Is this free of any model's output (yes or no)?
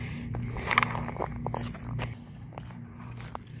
yes